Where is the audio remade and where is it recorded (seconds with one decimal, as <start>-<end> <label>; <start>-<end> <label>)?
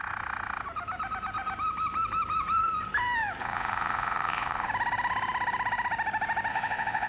0.0-3.4 recorded; 3.4-4.7 remade; 4.7-6.5 recorded; 6.5-7.1 remade